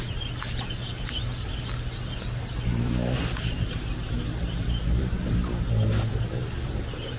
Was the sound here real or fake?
real